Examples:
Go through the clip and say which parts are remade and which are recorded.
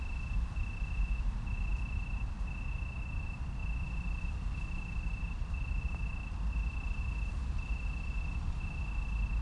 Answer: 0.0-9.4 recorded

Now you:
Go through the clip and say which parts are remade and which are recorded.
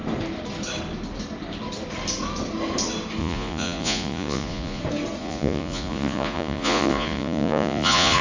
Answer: 0.0-3.2 recorded; 3.2-4.8 remade; 4.8-5.2 recorded; 5.2-8.2 remade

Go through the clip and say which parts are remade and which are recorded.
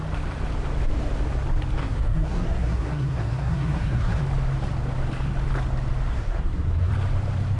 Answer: 0.0-1.8 recorded; 1.8-4.2 remade; 4.2-6.1 recorded; 6.1-6.9 remade; 6.9-7.6 recorded